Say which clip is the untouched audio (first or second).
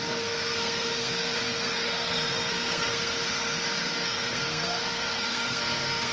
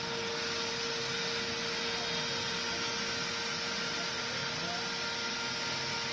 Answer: second